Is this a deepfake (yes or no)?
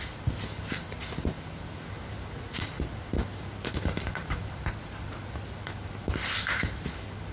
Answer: no